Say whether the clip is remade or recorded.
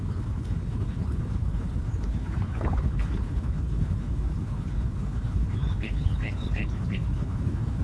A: remade